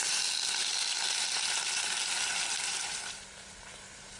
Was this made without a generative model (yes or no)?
yes